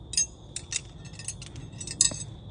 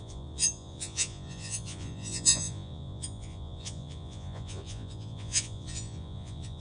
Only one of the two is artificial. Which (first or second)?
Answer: second